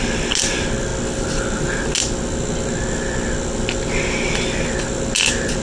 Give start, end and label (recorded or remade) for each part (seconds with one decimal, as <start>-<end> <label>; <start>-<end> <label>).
0.0-5.6 recorded